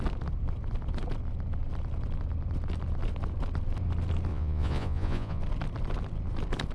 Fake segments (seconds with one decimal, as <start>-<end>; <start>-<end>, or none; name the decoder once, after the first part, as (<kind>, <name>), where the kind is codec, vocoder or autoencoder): 4.3-5.4 (vocoder, Vocos)